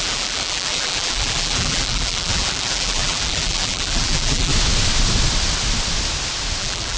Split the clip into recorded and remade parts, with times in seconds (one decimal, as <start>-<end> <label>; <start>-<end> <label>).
0.0-4.5 remade; 4.5-6.6 recorded; 6.6-7.0 remade

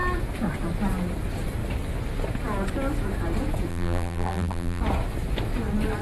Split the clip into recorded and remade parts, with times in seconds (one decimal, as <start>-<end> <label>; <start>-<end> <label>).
0.0-3.7 recorded; 3.7-4.8 remade; 4.8-6.0 recorded

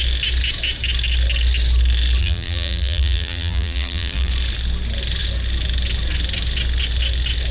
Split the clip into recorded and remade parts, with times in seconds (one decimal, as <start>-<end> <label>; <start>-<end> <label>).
0.0-2.2 recorded; 2.2-4.3 remade; 4.3-7.5 recorded

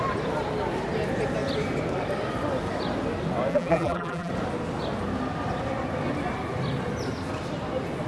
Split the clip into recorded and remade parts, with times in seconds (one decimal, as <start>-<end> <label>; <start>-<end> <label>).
0.0-3.5 recorded; 3.5-4.3 remade; 4.3-8.1 recorded

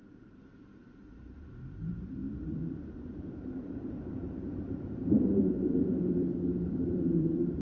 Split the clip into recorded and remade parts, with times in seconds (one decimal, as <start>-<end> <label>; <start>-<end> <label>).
0.0-7.6 remade

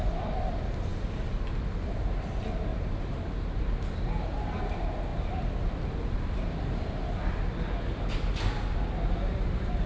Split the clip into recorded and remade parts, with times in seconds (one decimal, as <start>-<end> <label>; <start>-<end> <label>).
0.0-2.7 recorded; 2.7-3.6 remade; 3.6-9.9 recorded

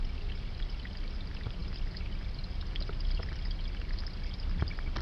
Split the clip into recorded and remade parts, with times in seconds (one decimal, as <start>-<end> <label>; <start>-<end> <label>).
0.0-5.0 recorded

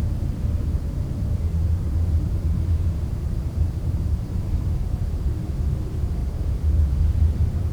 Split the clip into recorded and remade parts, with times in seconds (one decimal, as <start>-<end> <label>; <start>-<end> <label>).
0.0-1.6 recorded; 1.6-5.3 remade; 5.3-6.2 recorded; 6.2-6.9 remade; 6.9-7.7 recorded